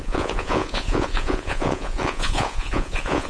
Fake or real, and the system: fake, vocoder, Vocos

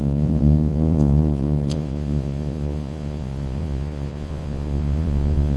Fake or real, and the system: fake, vocoder, Vocos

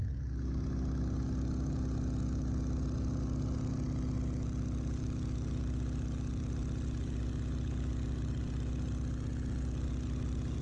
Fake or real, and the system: real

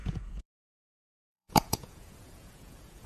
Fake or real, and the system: fake, vocoder, Vocos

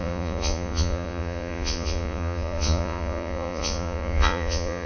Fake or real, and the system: fake, vocoder, Vocos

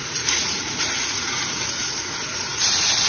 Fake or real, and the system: fake, vocoder, Vocos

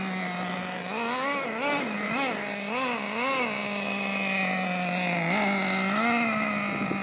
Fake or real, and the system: real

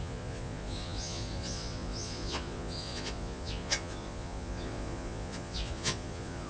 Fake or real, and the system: fake, vocoder, Vocos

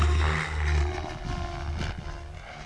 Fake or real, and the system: real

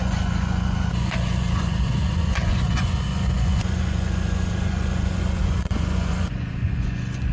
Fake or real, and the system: fake, vocoder, Vocos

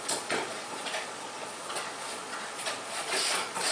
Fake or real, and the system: fake, vocoder, Vocos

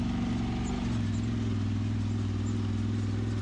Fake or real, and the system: real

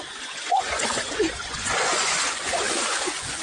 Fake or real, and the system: fake, vocoder, Vocos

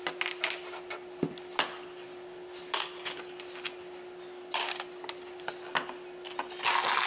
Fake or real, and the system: real